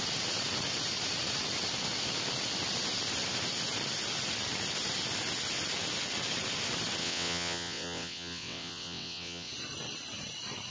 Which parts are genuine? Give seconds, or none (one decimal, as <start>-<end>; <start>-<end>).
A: 0.0-7.0; 9.5-10.7